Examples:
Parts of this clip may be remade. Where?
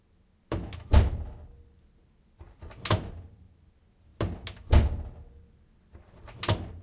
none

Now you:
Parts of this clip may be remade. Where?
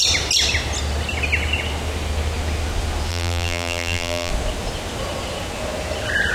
3.1-4.3 (vocoder, BigVGAN v2)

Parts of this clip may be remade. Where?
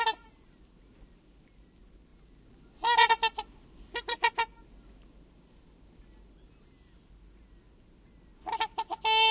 none